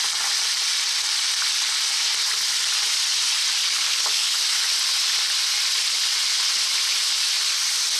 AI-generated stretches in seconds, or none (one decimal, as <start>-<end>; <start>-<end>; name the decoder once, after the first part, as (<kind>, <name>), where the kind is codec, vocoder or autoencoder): 3.6-4.4 (codec, HILCodec)